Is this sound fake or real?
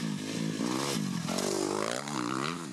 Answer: real